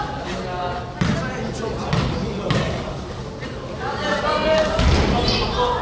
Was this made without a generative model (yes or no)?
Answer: yes